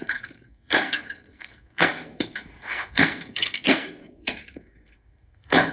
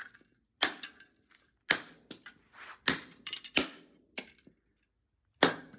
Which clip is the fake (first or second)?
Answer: first